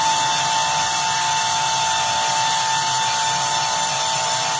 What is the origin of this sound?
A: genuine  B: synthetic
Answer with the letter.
A